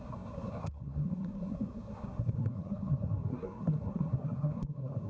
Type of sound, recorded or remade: remade